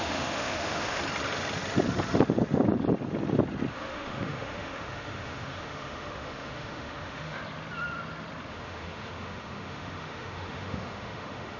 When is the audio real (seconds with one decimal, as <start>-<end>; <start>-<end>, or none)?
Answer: 1.0-3.7; 7.4-8.5